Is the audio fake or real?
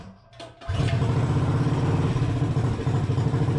real